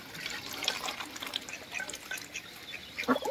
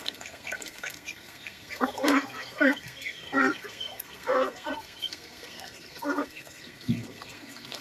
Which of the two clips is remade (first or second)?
second